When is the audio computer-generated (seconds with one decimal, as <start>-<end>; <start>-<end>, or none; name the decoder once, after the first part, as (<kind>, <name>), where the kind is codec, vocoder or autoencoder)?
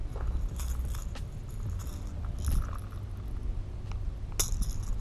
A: none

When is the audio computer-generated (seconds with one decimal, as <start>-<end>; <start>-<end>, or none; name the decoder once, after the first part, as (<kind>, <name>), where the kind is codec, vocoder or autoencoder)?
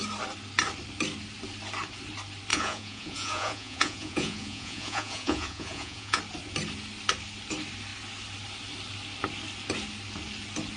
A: 2.5-6.2 (vocoder, Vocos)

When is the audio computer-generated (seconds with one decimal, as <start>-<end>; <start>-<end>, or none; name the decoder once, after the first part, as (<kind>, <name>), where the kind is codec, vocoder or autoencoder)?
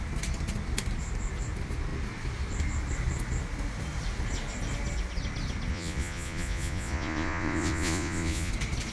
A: 5.7-8.5 (vocoder, Vocos)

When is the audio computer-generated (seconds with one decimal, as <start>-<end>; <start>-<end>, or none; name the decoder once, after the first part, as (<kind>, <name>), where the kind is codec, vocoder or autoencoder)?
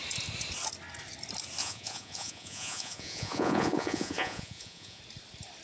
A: 1.6-5.0 (vocoder, Vocos)